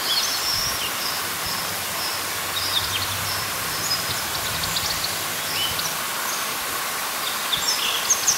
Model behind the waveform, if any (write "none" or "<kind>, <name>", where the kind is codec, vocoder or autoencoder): none